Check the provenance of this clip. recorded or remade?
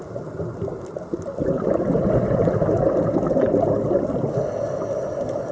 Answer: recorded